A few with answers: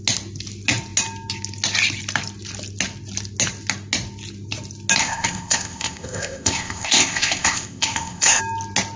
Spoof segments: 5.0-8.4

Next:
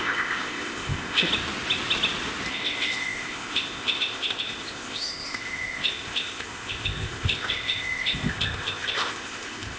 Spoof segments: 0.0-1.3; 2.5-9.8

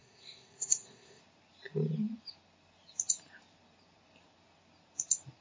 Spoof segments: 0.0-1.2

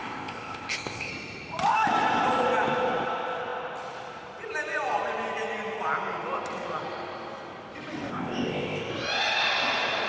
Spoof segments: 0.0-1.1; 8.1-8.9

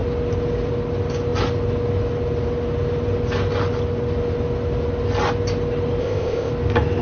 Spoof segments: 6.0-6.5

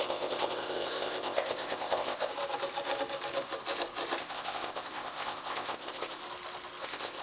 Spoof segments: 0.0-2.3; 4.2-6.2; 6.8-7.2